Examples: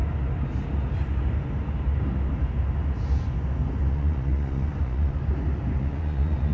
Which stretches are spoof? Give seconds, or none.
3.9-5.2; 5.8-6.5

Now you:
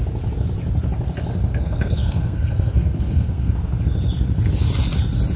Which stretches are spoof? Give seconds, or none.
1.5-3.8

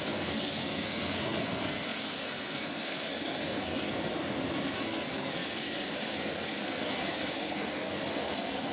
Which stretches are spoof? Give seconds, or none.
0.0-4.1; 4.7-8.7